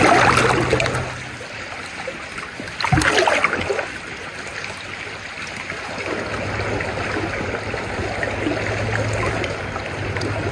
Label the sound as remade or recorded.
recorded